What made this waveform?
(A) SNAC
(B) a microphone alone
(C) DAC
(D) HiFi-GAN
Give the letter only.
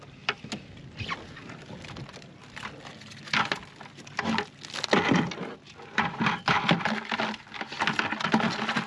B